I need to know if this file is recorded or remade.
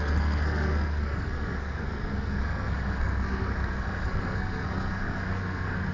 remade